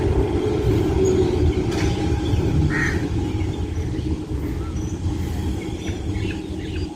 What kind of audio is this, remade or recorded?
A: recorded